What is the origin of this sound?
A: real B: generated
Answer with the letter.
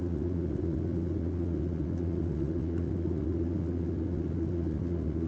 B